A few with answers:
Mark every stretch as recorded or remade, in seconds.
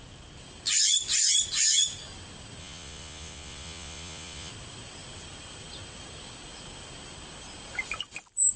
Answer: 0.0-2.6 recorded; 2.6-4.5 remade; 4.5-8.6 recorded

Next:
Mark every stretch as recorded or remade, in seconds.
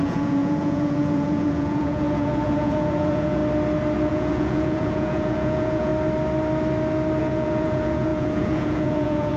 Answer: 0.0-3.4 remade; 3.4-4.1 recorded; 4.1-5.9 remade; 5.9-7.2 recorded; 7.2-9.4 remade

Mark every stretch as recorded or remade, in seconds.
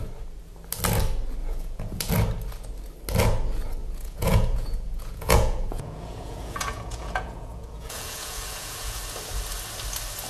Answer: 0.0-1.4 recorded; 1.4-2.1 remade; 2.1-3.8 recorded; 3.8-9.0 remade; 9.0-10.3 recorded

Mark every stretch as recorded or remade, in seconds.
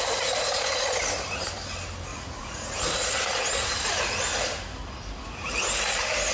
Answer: 0.0-2.1 recorded; 2.1-2.8 remade; 2.8-6.3 recorded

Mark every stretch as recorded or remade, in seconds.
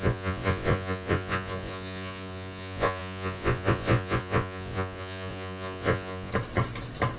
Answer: 0.0-6.3 remade; 6.3-7.2 recorded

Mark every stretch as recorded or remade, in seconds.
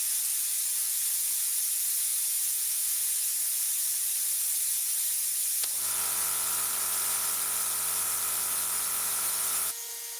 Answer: 0.0-0.7 recorded; 0.7-1.7 remade; 1.7-2.1 recorded; 2.1-6.5 remade; 6.5-9.0 recorded; 9.0-10.2 remade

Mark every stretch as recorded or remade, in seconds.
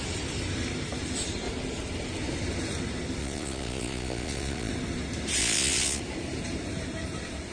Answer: 0.0-3.2 recorded; 3.2-4.7 remade; 4.7-5.4 recorded; 5.4-6.0 remade; 6.0-7.5 recorded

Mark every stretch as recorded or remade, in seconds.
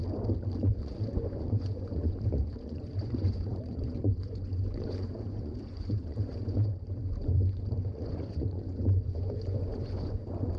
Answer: 0.0-0.6 recorded; 0.6-10.6 remade